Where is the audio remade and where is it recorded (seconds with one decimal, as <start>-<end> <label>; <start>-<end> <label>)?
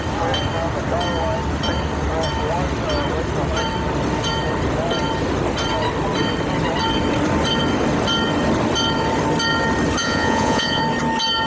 0.0-10.0 recorded; 10.0-10.8 remade; 10.8-11.5 recorded